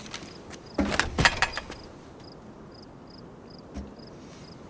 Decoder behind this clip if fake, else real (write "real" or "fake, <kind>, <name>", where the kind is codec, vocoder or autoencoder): real